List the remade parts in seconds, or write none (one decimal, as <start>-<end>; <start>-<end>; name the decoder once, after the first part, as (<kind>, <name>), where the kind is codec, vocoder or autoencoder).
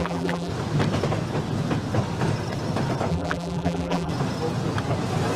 0.0-0.5 (vocoder, BigVGAN v2); 3.1-4.1